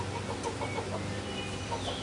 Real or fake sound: real